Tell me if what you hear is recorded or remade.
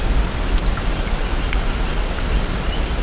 recorded